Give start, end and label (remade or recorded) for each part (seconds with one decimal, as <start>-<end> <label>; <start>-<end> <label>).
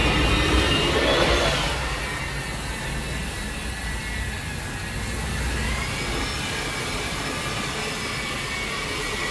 0.0-9.3 recorded